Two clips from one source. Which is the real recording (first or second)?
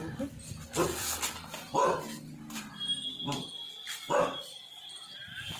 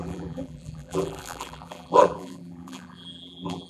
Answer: first